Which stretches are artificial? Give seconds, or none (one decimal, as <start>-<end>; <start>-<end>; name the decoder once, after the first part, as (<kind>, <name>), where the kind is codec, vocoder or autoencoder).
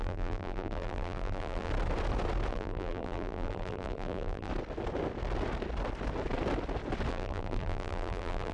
0.0-1.7 (vocoder, BigVGAN v2); 2.5-4.5; 7.1-8.5